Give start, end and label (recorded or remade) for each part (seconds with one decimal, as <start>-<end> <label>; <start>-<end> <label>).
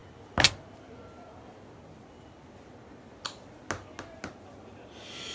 0.0-5.3 recorded